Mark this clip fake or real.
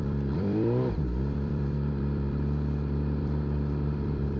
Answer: fake